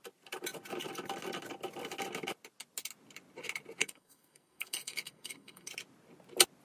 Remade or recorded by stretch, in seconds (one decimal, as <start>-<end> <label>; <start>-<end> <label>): 0.0-3.8 recorded; 3.8-5.7 remade; 5.7-6.6 recorded